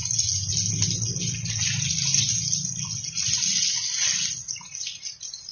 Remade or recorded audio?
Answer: recorded